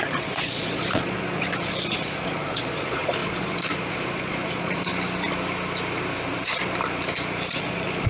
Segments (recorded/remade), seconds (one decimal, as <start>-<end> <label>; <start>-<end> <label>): 0.0-4.9 remade; 4.9-7.5 recorded; 7.5-8.1 remade